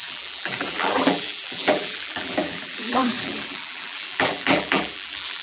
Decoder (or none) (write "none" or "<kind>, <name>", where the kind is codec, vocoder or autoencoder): vocoder, BigVGAN v2